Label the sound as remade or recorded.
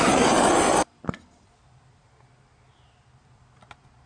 recorded